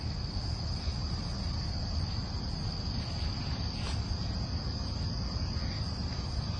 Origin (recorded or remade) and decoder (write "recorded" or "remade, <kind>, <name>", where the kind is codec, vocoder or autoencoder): recorded